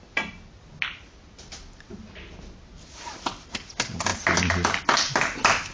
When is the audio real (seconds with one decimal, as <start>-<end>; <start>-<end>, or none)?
0.0-5.7